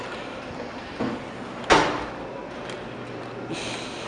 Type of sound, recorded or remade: recorded